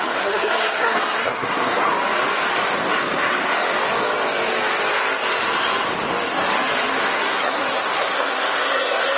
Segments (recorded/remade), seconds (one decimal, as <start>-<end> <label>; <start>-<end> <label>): 0.0-1.9 remade; 1.9-7.0 recorded; 7.0-9.2 remade